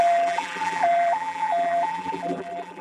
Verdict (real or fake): fake